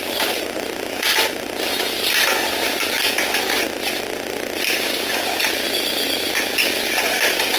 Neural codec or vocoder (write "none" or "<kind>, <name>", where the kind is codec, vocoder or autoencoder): none